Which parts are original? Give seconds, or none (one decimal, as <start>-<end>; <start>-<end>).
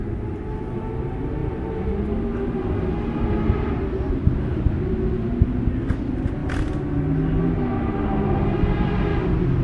0.0-9.6